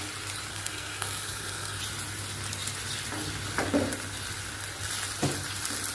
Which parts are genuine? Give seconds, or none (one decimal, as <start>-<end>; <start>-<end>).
0.0-0.5; 1.8-5.9